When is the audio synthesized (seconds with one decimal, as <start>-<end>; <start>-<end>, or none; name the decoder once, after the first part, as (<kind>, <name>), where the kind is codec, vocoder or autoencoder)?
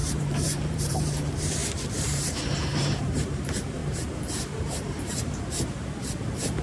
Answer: 0.0-6.6 (vocoder, BigVGAN v2)